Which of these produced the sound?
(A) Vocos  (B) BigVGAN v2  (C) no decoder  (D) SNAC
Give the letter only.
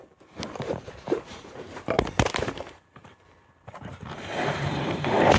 B